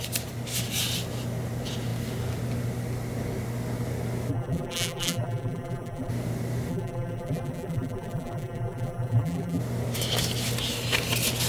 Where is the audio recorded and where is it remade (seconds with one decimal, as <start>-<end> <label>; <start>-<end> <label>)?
0.0-4.3 recorded; 4.3-6.1 remade; 6.1-6.7 recorded; 6.7-9.6 remade; 9.6-11.5 recorded